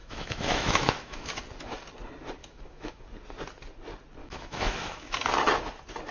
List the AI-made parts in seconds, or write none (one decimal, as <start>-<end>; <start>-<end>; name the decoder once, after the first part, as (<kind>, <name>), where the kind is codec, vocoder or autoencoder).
0.0-1.4 (autoencoder, DAC-VAE); 2.4-3.0; 4.2-5.2